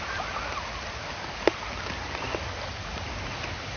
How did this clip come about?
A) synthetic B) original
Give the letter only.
B